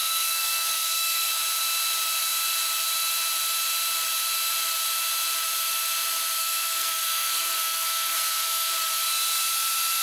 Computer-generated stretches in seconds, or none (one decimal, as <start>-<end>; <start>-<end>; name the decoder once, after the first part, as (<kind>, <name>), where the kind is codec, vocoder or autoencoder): 0.0-1.3 (codec, SNAC); 6.4-8.7